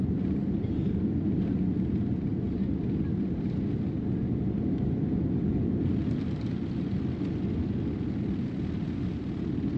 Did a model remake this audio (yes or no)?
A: no